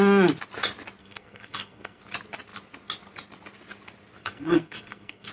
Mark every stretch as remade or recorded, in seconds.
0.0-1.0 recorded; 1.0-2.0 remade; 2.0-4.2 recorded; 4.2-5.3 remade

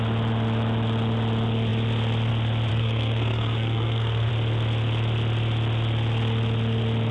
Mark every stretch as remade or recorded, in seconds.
0.0-2.7 recorded; 2.7-4.3 remade; 4.3-7.1 recorded

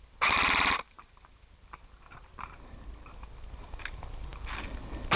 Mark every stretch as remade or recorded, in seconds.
0.0-5.2 recorded

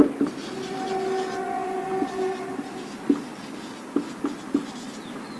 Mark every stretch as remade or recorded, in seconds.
0.0-5.4 recorded

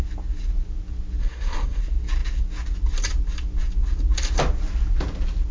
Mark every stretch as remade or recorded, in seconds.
0.0-1.2 recorded; 1.2-1.8 remade; 1.8-5.5 recorded

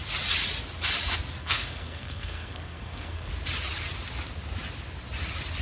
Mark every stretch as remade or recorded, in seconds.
0.0-1.4 recorded; 1.4-3.3 remade; 3.3-5.6 recorded

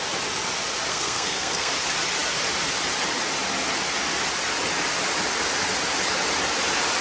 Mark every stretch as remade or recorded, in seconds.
0.0-0.9 recorded; 0.9-1.7 remade; 1.7-7.0 recorded